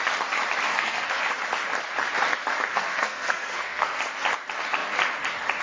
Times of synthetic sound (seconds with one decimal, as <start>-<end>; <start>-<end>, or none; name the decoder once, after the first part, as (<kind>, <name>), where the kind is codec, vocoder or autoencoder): 0.7-1.2 (codec, SNAC); 2.7-4.0